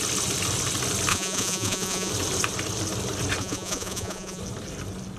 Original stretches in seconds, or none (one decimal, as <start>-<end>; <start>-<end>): 0.0-1.1; 2.1-3.4; 4.4-5.2